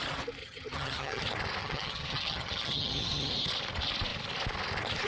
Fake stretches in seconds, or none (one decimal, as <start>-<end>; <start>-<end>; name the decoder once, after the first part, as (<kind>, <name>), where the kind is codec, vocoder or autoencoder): 0.4-1.2 (vocoder, HiFi-GAN); 1.6-3.3